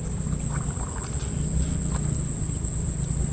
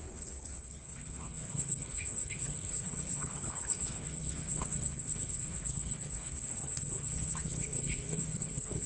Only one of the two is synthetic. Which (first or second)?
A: second